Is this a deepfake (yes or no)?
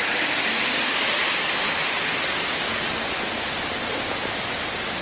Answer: no